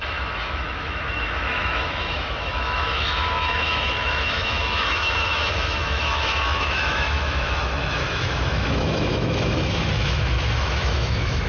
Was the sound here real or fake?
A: fake